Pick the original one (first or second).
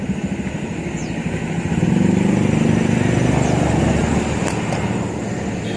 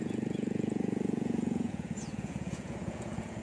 first